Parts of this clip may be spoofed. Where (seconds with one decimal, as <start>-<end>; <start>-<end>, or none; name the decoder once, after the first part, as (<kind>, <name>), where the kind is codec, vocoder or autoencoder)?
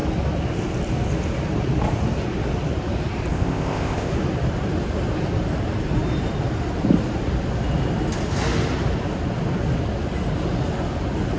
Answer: 3.3-4.1 (codec, ZipCodec)